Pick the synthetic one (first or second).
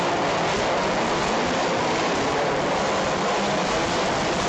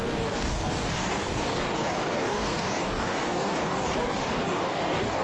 second